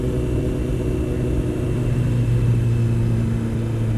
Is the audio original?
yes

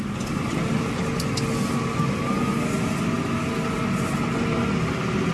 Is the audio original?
yes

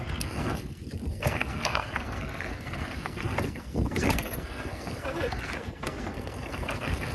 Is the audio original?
no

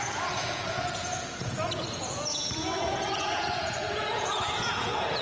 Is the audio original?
no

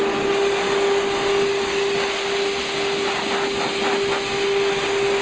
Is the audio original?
yes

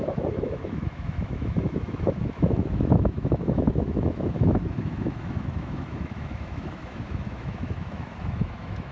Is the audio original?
no